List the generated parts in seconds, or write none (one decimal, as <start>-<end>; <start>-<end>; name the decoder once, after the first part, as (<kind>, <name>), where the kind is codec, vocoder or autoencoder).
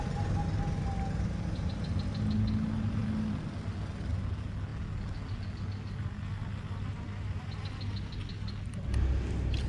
none